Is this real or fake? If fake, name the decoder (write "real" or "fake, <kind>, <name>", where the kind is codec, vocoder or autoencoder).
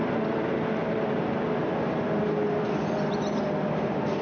fake, vocoder, BigVGAN v2